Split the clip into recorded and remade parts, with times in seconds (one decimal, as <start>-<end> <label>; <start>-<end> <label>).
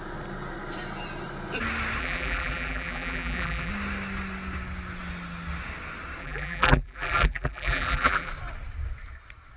0.0-2.0 recorded; 2.0-3.7 remade; 3.7-6.2 recorded; 6.2-8.3 remade; 8.3-9.6 recorded